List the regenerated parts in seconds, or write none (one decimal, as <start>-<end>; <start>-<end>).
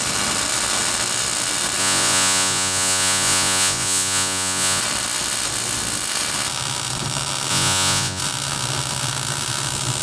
1.8-4.8; 7.5-8.2